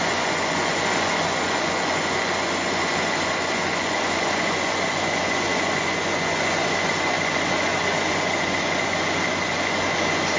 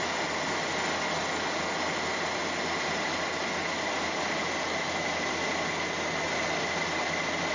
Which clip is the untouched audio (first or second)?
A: second